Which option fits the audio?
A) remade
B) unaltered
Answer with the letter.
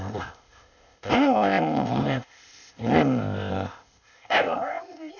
A